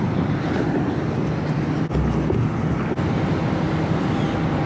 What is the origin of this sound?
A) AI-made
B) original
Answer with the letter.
B